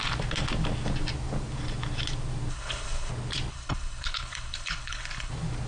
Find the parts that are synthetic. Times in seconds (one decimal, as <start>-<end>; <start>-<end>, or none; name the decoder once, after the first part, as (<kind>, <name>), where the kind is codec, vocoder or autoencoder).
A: 2.5-3.1 (codec, HILCodec); 3.5-5.3